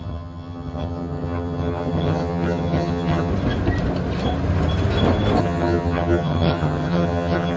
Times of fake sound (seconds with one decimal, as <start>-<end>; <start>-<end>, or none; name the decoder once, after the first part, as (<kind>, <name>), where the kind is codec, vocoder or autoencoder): 0.0-3.3 (vocoder, HiFi-GAN); 5.4-7.6